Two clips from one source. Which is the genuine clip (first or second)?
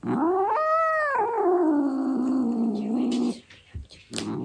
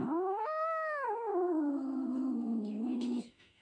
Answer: first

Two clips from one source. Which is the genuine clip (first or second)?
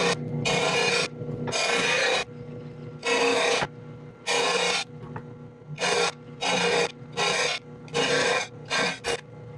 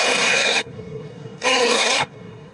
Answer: first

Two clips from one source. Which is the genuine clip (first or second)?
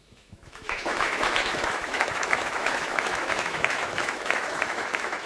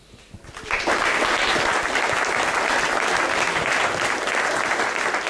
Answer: second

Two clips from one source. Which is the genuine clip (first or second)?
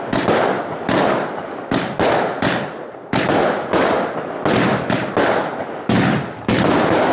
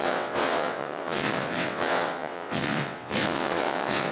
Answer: first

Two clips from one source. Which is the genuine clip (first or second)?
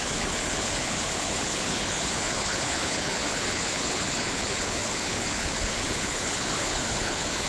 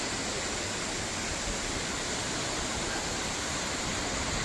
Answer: second